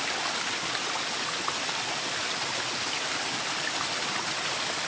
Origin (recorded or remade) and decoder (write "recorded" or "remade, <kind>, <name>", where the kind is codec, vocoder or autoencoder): recorded